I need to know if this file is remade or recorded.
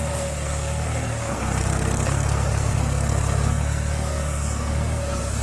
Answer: remade